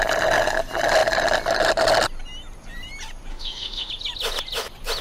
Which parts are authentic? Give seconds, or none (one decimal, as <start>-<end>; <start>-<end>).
0.0-3.3; 3.9-5.0